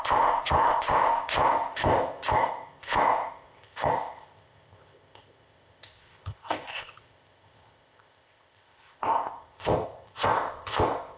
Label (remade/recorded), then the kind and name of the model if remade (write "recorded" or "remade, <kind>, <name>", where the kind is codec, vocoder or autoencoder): remade, codec, ZipCodec